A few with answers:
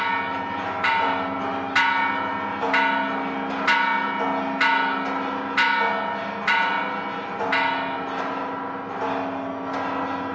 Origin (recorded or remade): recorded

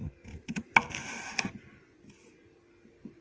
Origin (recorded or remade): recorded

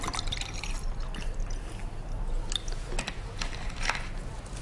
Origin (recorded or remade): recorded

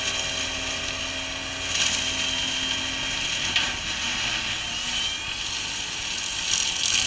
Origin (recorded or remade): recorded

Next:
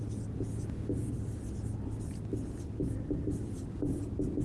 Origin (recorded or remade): recorded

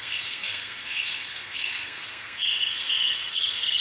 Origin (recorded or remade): remade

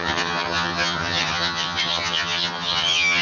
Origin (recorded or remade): remade